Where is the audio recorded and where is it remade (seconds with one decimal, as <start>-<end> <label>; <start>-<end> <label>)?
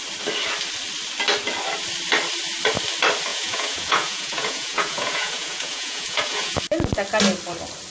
0.0-3.3 recorded; 3.3-6.6 remade; 6.6-7.9 recorded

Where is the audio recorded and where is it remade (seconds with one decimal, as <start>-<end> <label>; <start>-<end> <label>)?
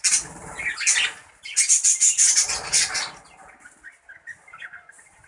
0.0-5.3 recorded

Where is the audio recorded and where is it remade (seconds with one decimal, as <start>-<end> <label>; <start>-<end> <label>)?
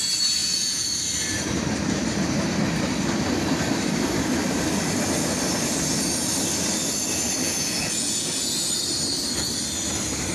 0.0-0.4 recorded; 0.4-1.0 remade; 1.0-7.4 recorded; 7.4-8.7 remade; 8.7-10.3 recorded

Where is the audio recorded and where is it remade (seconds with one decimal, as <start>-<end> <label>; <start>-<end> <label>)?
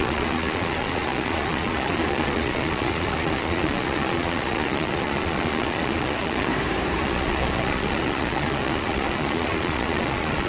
0.0-6.5 remade; 6.5-7.0 recorded; 7.0-10.5 remade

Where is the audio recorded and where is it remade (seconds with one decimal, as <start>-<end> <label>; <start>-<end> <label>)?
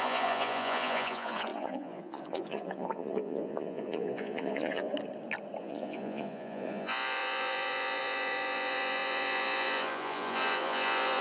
0.0-4.9 remade; 4.9-5.6 recorded; 5.6-11.2 remade